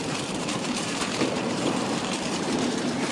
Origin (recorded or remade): remade